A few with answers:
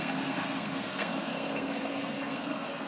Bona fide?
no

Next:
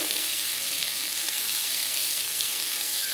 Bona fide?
no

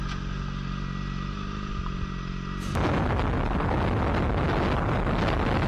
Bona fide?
yes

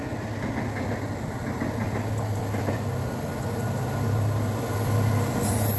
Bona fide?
yes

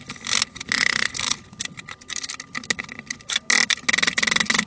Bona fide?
yes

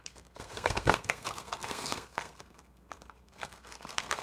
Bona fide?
no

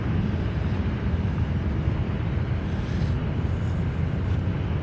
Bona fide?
yes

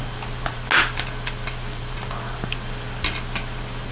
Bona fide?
yes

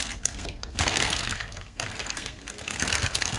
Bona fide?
no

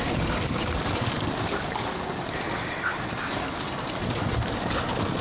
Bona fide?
yes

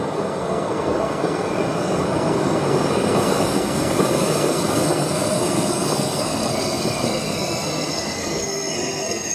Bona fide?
no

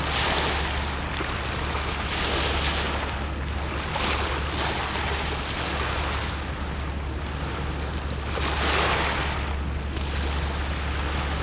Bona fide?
yes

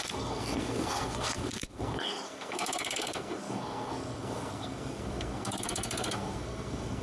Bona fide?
no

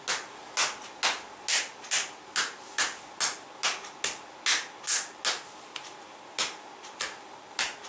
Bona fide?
yes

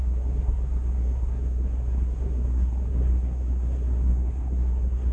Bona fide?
no